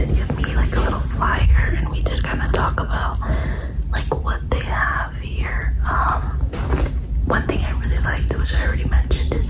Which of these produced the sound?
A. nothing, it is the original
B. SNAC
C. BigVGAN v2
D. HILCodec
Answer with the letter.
A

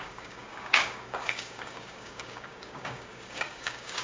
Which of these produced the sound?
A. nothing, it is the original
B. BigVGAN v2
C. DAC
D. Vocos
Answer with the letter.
C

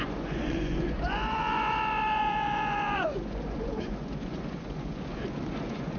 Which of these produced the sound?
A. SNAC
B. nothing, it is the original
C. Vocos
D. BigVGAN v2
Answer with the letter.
C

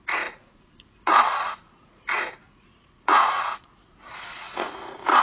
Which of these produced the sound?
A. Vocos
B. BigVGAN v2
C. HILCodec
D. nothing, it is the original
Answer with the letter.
A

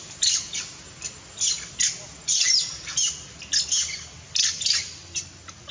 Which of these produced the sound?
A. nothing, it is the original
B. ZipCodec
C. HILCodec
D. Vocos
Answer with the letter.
A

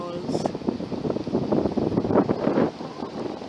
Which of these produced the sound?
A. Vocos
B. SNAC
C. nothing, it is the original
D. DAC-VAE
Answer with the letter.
C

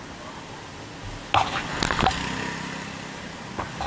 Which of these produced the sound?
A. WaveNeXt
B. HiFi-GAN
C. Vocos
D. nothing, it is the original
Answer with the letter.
D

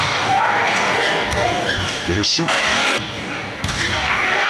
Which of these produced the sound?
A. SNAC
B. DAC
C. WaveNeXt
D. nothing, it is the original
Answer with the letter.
B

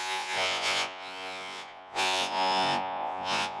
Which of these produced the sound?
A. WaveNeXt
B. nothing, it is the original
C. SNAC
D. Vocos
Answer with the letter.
D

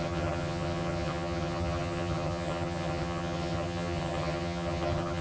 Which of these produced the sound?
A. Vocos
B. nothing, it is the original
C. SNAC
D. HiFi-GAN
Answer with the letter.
D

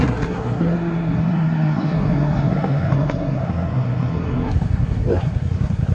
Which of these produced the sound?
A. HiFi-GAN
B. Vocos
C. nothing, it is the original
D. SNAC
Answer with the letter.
D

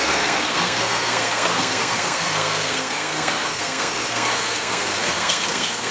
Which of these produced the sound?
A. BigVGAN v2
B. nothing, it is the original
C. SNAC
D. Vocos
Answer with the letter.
C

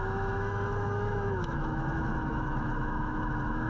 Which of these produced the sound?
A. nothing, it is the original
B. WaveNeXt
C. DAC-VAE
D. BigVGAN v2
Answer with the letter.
C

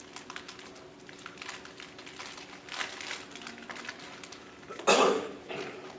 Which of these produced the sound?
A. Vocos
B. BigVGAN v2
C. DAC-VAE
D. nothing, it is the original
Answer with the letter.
D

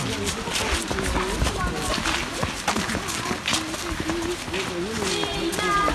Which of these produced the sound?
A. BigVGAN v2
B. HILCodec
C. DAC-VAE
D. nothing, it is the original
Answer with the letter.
D